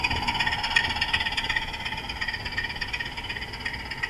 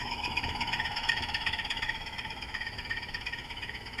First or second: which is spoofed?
second